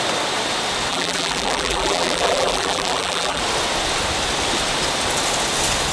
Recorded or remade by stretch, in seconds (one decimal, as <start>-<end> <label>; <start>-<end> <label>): 0.0-0.9 recorded; 0.9-3.4 remade; 3.4-5.9 recorded